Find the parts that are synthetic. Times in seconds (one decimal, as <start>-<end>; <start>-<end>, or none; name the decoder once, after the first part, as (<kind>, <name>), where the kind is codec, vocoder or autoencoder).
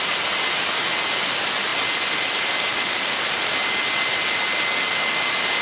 none